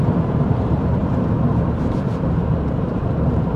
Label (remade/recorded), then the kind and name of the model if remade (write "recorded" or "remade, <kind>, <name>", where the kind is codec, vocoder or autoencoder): remade, vocoder, BigVGAN v2